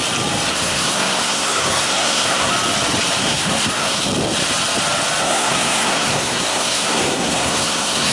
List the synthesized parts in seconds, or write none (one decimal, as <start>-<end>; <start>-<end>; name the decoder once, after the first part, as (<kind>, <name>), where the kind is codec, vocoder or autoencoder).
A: 0.5-2.5 (codec, SNAC); 3.2-4.1; 5.2-8.1